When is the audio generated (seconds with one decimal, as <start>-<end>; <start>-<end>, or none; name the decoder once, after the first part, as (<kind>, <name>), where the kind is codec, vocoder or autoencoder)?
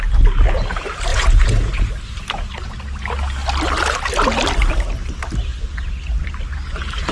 1.1-1.9 (vocoder, Vocos)